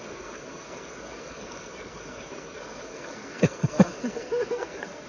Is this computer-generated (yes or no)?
yes